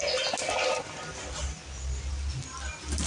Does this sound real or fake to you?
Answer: real